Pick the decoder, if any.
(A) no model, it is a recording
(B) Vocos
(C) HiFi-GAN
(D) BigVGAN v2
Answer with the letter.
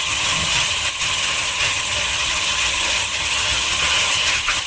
C